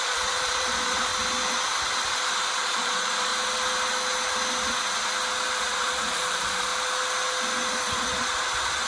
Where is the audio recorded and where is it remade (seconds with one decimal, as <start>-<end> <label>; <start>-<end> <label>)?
0.0-1.1 remade; 1.1-2.6 recorded; 2.6-3.3 remade; 3.3-5.6 recorded; 5.6-6.7 remade; 6.7-7.8 recorded; 7.8-8.9 remade